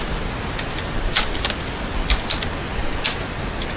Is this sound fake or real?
real